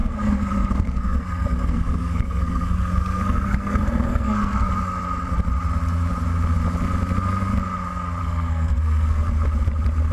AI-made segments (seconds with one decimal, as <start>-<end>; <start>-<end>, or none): 0.0-4.7; 8.2-9.3